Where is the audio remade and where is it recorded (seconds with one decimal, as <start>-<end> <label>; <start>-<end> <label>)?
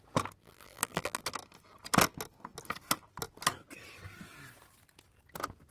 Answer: 0.0-0.4 recorded; 0.4-1.2 remade; 1.2-5.7 recorded